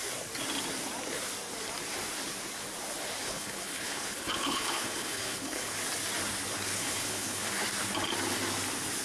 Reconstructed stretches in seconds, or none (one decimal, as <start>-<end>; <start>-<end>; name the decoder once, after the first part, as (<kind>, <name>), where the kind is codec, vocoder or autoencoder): 3.2-5.7 (codec, HILCodec); 6.8-7.5